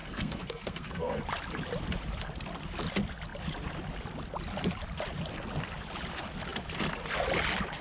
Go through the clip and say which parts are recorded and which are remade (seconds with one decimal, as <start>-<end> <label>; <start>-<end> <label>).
0.0-1.2 remade; 1.2-7.8 recorded